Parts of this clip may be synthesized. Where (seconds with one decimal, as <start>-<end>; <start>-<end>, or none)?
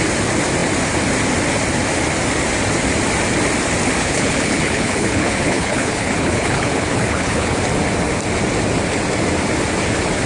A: 4.0-7.6